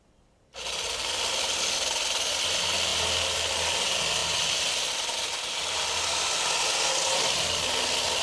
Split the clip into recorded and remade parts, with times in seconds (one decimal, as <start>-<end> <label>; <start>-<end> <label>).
0.0-8.2 recorded